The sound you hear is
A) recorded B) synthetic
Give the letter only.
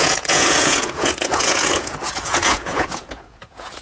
B